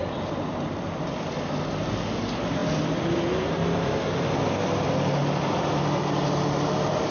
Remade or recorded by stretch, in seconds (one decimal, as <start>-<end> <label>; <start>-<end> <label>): 0.0-7.1 recorded